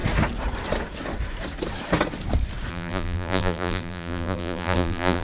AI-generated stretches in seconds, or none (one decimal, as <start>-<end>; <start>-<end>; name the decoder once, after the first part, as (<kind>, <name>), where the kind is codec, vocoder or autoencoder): 2.7-5.2 (vocoder, BigVGAN v2)